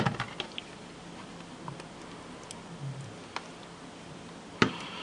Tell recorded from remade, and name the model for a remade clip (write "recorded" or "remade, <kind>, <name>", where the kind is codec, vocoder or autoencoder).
recorded